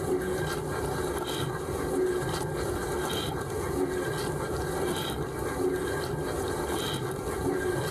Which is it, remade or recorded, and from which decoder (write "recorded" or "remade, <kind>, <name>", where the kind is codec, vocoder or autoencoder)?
recorded